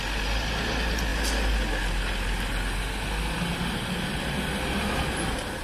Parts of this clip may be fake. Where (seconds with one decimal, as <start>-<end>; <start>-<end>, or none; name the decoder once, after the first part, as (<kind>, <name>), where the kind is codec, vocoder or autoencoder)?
none